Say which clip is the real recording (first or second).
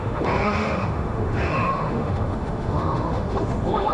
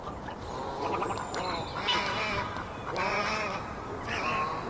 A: second